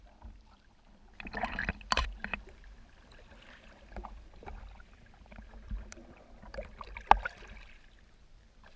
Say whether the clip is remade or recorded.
remade